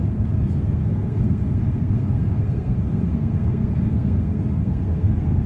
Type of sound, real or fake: fake